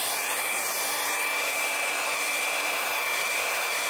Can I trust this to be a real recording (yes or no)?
no